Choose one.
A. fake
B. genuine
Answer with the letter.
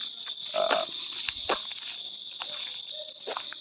B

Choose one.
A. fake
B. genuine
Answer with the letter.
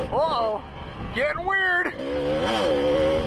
B